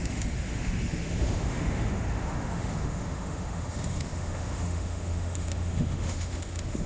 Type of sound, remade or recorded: remade